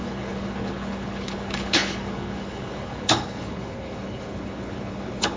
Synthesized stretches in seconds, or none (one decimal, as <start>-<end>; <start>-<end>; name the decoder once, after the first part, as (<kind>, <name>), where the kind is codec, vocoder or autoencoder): 0.0-5.4 (codec, HILCodec)